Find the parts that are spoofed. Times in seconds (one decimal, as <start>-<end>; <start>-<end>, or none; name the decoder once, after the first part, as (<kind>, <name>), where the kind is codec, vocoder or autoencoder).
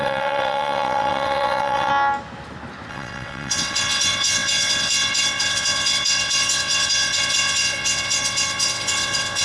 0.0-1.9 (vocoder, WaveNeXt); 2.9-9.4